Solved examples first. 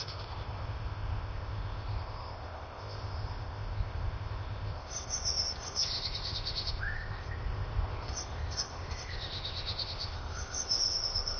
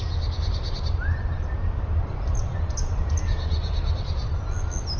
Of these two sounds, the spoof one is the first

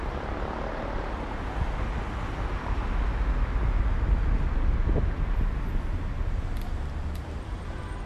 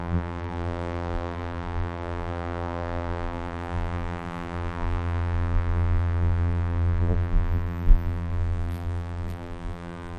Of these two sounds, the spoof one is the second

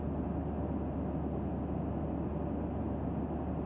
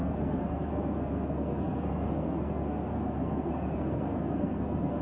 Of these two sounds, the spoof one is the second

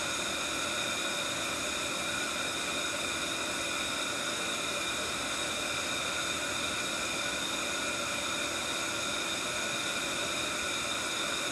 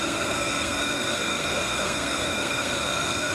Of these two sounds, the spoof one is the second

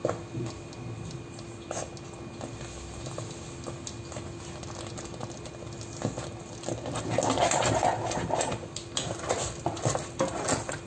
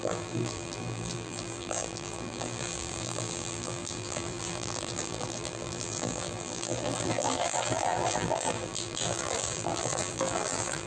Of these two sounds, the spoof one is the second